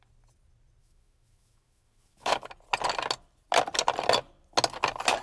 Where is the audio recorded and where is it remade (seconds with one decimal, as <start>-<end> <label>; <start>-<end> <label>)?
0.0-0.8 recorded; 0.8-2.5 remade; 2.5-5.2 recorded